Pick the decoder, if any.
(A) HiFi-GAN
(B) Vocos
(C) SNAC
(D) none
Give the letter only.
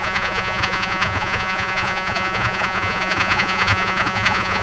B